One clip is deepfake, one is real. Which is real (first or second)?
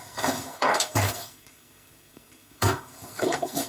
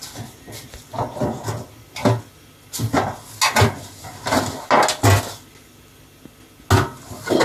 second